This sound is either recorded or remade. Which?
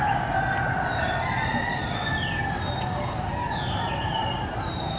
recorded